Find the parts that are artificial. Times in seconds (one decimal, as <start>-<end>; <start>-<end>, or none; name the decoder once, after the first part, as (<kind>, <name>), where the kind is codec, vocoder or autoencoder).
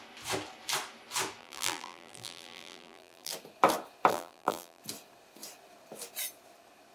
1.4-3.3 (vocoder, BigVGAN v2); 4.1-4.8